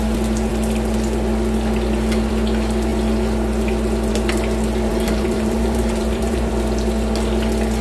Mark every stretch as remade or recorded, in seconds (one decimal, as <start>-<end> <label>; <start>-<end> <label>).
0.0-4.9 recorded; 4.9-6.5 remade; 6.5-7.8 recorded